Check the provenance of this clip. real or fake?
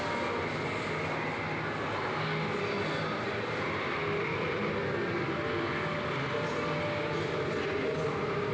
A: real